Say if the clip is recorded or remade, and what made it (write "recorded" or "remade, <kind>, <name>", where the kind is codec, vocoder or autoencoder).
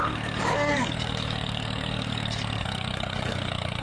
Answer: remade, codec, DAC